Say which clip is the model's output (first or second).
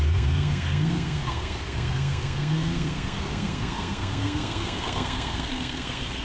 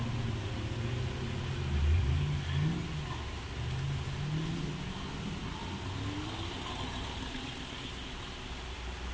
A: first